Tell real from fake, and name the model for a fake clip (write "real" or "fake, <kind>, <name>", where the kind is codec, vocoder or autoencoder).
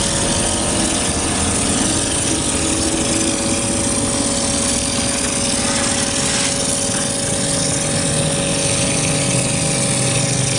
real